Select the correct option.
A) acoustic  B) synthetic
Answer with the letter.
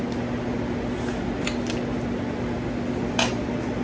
A